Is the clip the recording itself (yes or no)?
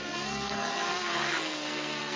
no